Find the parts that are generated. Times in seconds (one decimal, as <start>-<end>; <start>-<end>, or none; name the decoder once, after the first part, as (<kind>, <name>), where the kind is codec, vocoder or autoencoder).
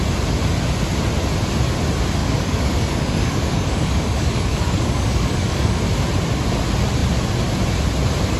2.2-5.8 (codec, DAC)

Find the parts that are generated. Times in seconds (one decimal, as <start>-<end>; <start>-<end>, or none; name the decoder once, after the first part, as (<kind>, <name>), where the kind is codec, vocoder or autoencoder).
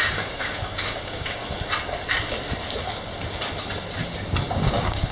0.0-1.4 (codec, DAC); 4.5-5.1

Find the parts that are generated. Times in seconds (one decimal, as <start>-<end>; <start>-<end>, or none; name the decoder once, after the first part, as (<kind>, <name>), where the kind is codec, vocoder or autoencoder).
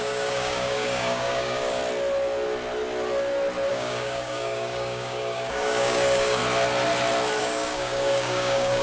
0.0-1.8 (codec, DAC); 3.7-6.4; 7.4-8.8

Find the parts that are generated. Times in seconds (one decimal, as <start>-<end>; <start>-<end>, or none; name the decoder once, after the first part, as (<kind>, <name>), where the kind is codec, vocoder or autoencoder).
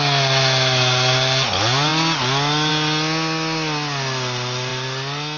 none